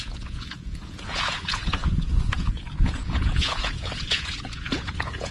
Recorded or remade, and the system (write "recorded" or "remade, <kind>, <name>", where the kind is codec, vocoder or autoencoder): remade, vocoder, Vocos